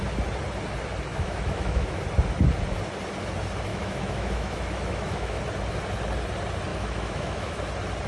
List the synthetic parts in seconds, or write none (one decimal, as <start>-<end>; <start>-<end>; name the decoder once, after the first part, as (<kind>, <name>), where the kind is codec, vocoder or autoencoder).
1.1-2.0 (autoencoder, DAC-VAE); 3.7-5.4; 6.7-7.6